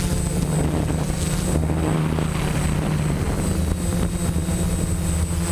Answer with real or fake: real